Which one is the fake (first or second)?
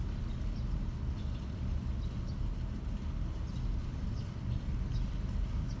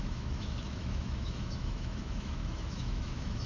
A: second